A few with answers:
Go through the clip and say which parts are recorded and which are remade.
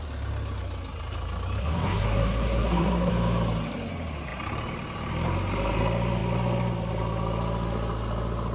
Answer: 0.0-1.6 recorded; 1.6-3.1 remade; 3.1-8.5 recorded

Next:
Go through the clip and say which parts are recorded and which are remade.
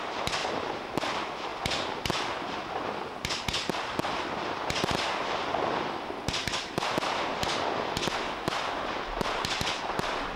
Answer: 0.0-0.4 recorded; 0.4-0.9 remade; 0.9-10.4 recorded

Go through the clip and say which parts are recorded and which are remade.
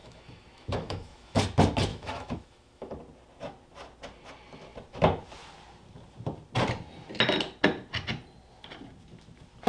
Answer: 0.0-1.4 remade; 1.4-1.9 recorded; 1.9-2.9 remade; 2.9-9.7 recorded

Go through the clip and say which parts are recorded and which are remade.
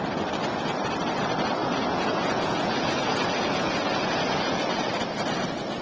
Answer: 0.0-1.6 recorded; 1.6-4.9 remade; 4.9-5.8 recorded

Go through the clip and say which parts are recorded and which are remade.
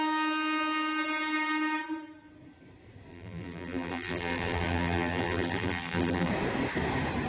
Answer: 0.0-3.1 recorded; 3.1-6.3 remade; 6.3-7.3 recorded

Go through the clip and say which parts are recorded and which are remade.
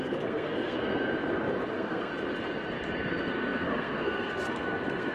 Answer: 0.0-0.8 remade; 0.8-1.7 recorded; 1.7-2.1 remade; 2.1-3.1 recorded; 3.1-5.1 remade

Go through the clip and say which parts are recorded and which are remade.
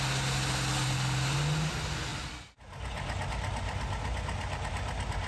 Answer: 0.0-5.3 recorded